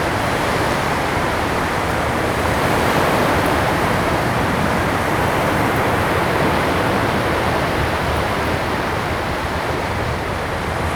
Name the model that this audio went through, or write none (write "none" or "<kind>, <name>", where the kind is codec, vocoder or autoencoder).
vocoder, BigVGAN v2